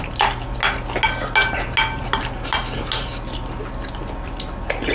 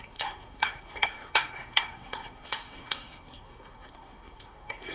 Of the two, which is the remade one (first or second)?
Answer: second